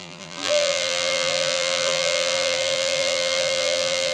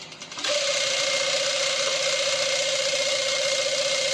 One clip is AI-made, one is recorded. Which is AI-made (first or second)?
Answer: first